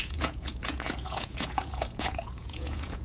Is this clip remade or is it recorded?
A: remade